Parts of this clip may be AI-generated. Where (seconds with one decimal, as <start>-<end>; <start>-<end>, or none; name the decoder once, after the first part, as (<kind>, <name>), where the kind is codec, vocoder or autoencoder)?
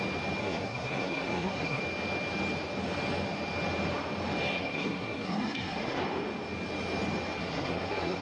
0.4-1.8 (codec, SNAC); 4.5-6.0; 7.4-8.2